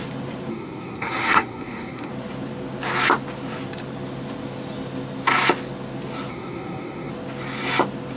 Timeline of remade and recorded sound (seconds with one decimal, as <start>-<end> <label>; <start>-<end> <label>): 0.0-0.5 recorded; 0.5-2.1 remade; 2.1-6.3 recorded; 6.3-7.1 remade; 7.1-8.2 recorded